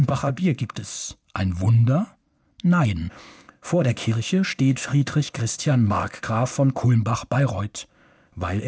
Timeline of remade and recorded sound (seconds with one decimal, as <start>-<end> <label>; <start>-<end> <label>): 0.0-1.0 remade; 1.0-3.1 recorded; 3.1-6.8 remade; 6.8-7.9 recorded; 7.9-8.7 remade